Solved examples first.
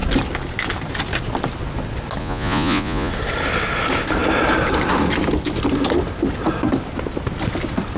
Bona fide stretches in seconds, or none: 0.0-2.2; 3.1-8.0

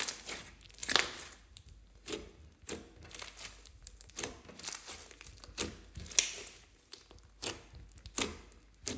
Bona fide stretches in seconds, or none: 0.0-9.0